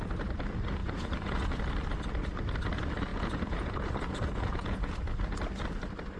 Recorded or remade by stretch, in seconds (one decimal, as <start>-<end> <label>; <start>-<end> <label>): 0.0-0.8 recorded; 0.8-1.6 remade; 1.6-3.1 recorded; 3.1-5.0 remade; 5.0-6.2 recorded